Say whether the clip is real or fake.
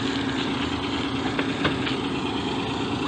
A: real